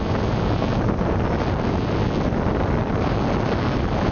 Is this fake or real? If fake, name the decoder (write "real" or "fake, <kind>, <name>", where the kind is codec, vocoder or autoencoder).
real